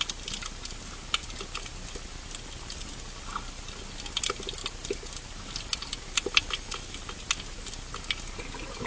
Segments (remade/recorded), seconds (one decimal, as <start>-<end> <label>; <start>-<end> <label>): 0.0-8.9 recorded